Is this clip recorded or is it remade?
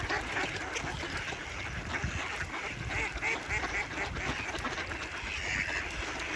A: recorded